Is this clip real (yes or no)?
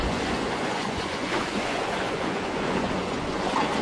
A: no